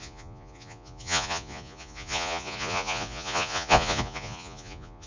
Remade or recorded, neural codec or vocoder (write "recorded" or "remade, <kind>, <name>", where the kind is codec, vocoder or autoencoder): remade, vocoder, Vocos